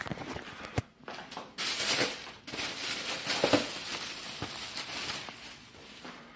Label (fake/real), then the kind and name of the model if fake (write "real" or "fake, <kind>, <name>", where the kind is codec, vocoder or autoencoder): real